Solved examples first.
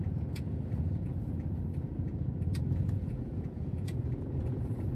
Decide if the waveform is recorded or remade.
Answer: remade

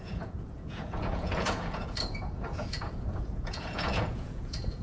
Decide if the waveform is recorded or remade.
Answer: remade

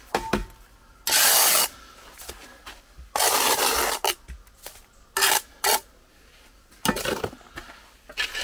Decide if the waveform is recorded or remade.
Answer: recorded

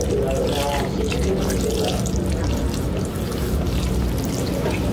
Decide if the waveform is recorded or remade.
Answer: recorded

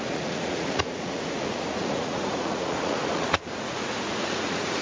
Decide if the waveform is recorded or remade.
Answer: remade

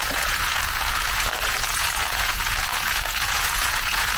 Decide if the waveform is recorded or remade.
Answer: remade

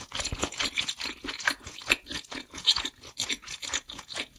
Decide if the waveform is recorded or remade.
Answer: remade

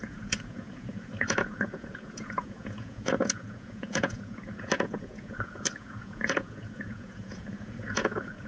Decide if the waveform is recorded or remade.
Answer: remade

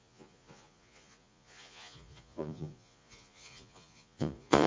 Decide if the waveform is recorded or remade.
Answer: remade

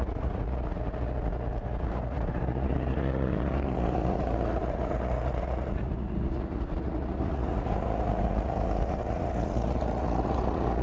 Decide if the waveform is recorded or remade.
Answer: remade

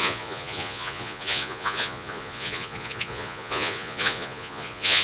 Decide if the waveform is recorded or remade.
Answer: remade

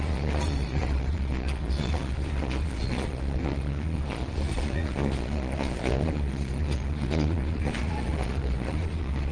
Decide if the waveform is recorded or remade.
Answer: remade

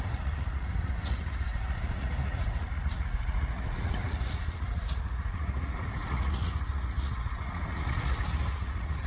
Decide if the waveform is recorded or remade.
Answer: remade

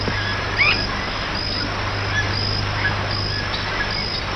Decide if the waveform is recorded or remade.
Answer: recorded